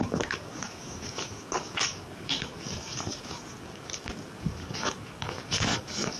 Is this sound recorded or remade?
remade